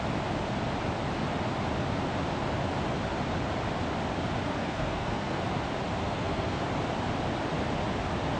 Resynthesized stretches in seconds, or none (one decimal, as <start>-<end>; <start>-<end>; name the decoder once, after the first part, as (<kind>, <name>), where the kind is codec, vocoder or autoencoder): 4.6-5.4 (codec, SNAC); 6.0-6.6